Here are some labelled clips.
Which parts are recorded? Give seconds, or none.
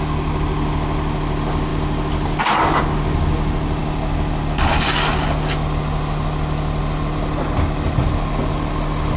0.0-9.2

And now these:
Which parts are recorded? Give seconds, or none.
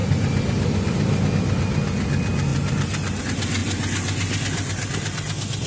1.3-2.5; 3.2-5.7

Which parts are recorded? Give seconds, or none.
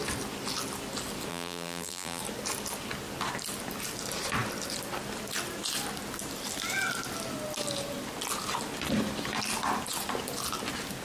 0.0-1.3; 2.2-11.0